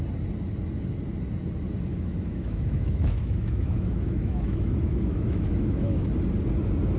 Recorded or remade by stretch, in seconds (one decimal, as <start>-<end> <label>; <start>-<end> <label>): 0.0-1.9 recorded; 1.9-6.1 remade; 6.1-7.0 recorded